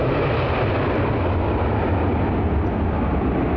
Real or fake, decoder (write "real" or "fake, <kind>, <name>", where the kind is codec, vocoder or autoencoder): real